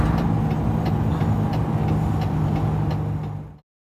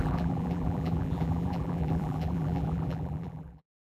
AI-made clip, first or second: second